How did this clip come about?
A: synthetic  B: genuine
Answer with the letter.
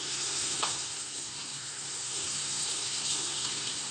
A